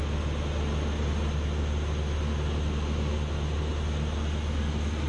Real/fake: real